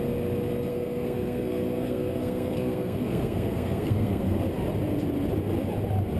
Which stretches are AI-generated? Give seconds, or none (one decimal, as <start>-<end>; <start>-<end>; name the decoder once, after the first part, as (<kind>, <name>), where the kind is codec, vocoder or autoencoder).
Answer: 0.7-4.4 (codec, SNAC)